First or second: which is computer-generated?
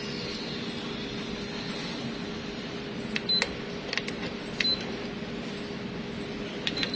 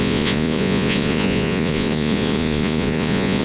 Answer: second